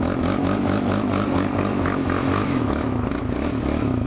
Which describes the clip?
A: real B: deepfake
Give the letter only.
B